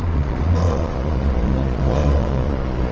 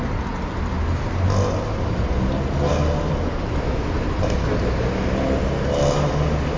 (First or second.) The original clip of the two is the second